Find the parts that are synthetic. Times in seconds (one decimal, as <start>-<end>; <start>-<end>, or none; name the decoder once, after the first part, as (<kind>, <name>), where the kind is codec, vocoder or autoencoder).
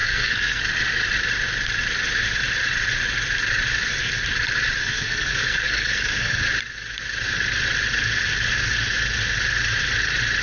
0.0-0.6 (codec, SNAC); 4.8-6.4